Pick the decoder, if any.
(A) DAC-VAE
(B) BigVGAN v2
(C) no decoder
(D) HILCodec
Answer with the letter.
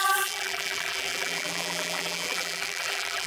B